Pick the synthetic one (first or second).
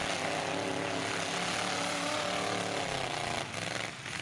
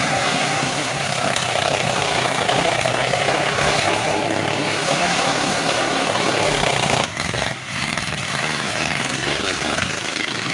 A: second